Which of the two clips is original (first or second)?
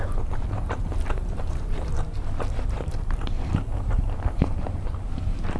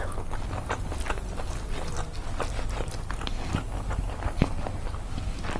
second